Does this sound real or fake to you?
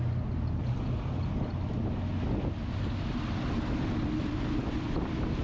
real